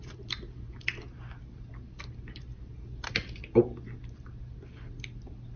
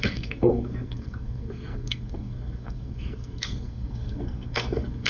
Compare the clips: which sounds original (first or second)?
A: first